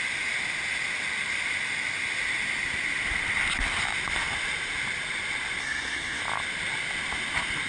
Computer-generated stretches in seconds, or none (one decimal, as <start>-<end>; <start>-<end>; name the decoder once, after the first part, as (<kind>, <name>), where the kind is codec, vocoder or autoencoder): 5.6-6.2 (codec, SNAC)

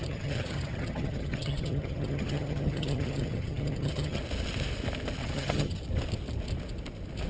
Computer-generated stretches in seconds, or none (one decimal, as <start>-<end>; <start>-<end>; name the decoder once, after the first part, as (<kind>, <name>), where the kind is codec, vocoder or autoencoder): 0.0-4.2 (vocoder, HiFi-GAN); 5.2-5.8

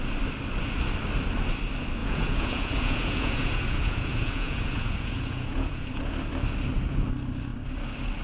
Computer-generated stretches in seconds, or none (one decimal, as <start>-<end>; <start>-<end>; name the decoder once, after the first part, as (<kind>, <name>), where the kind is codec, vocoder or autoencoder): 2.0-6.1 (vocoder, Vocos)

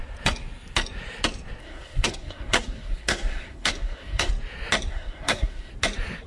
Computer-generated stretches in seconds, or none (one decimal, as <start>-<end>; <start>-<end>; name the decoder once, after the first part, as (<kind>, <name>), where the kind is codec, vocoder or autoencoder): 1.6-4.3 (codec, SNAC); 4.9-5.7

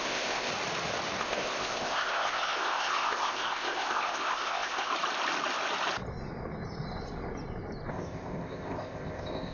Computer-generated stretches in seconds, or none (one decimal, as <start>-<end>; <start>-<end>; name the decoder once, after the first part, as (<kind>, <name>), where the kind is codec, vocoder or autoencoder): 0.0-0.5 (codec, ZipCodec); 1.2-4.9; 7.9-9.5